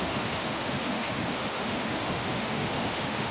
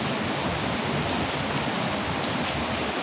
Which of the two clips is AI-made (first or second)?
first